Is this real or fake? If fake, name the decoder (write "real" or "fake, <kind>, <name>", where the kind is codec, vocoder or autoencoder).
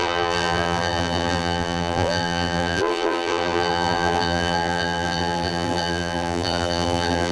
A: fake, vocoder, BigVGAN v2